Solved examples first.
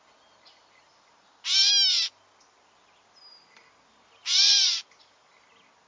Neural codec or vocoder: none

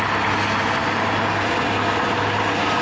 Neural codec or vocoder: none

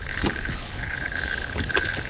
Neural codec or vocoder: codec, HILCodec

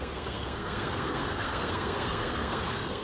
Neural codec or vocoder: codec, SNAC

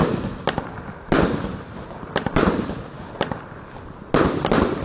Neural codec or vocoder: none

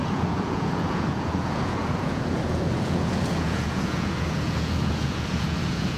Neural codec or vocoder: vocoder, Vocos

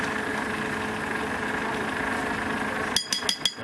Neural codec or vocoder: none